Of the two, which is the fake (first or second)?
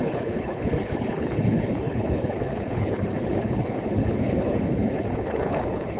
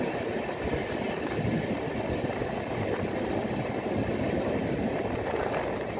first